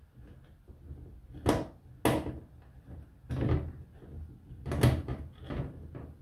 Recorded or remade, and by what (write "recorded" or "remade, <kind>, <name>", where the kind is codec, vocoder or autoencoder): recorded